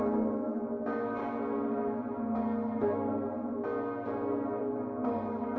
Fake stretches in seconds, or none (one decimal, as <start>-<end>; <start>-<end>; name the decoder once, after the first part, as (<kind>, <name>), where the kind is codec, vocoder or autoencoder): 0.0-1.2 (codec, DAC); 4.6-5.6